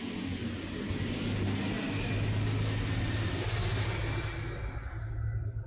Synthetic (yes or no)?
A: no